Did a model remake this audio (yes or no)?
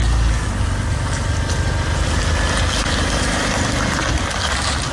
no